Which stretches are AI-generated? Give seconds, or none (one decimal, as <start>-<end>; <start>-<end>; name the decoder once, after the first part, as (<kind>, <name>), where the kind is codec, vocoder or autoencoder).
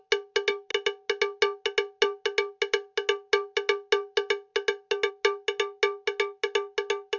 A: none